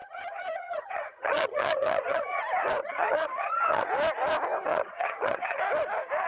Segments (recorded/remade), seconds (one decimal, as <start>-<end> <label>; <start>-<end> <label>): 0.0-2.4 remade; 2.4-2.8 recorded; 2.8-3.9 remade; 3.9-4.7 recorded; 4.7-5.6 remade; 5.6-6.3 recorded